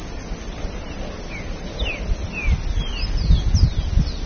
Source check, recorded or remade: recorded